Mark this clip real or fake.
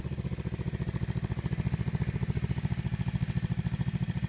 real